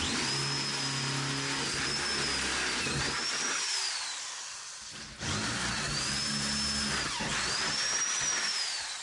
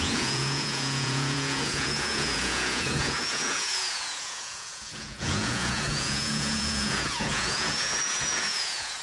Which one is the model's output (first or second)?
second